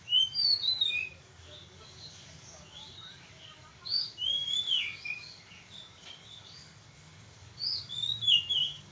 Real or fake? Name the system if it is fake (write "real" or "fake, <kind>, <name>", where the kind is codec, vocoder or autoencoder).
fake, codec, DAC